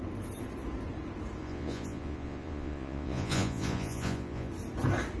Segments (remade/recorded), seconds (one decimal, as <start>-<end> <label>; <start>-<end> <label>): 0.0-1.4 recorded; 1.4-4.5 remade; 4.5-5.2 recorded